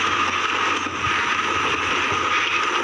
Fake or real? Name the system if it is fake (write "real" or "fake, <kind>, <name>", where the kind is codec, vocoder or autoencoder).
real